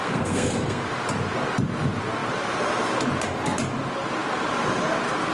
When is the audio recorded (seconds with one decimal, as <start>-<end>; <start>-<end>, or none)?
0.8-5.3

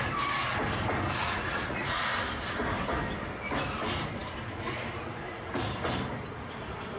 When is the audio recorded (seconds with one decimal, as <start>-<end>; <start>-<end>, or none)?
0.0-1.2; 2.0-7.0

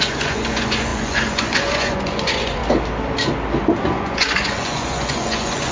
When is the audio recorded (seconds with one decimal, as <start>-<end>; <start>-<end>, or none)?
2.6-3.8

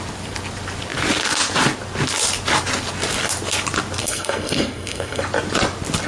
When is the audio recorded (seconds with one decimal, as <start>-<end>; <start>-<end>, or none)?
0.0-4.0; 5.2-6.1